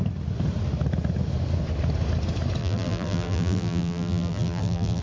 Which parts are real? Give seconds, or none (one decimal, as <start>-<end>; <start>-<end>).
0.0-2.6